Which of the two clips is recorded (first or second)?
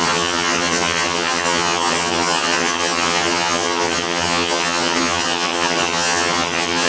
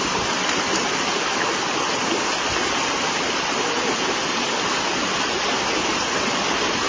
second